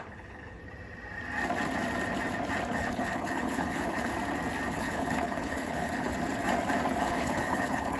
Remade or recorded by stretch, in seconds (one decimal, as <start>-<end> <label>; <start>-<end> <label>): 0.0-0.6 remade; 0.6-2.7 recorded; 2.7-4.1 remade; 4.1-4.7 recorded; 4.7-6.1 remade; 6.1-7.0 recorded; 7.0-8.0 remade